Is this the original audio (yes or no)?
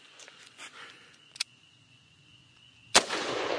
no